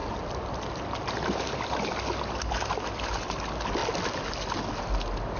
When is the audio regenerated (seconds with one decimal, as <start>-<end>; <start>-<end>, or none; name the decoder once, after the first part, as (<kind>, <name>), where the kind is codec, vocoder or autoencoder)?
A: none